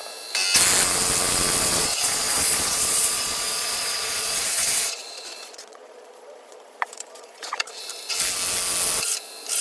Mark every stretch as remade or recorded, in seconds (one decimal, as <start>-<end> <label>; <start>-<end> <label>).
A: 0.0-1.6 recorded; 1.6-7.8 remade; 7.8-9.6 recorded